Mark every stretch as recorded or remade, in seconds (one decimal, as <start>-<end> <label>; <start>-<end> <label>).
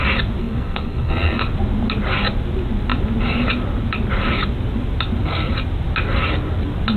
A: 0.0-0.4 recorded; 0.4-1.4 remade; 1.4-7.0 recorded